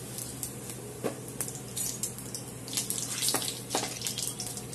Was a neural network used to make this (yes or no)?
no